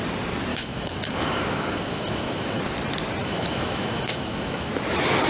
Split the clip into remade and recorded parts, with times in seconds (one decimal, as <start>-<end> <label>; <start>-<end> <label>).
0.0-0.5 recorded; 0.5-2.6 remade; 2.6-3.2 recorded; 3.2-4.7 remade; 4.7-5.3 recorded